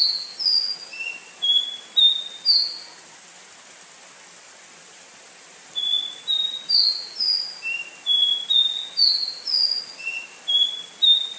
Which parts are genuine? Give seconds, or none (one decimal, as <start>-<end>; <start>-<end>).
0.0-9.2; 10.3-11.4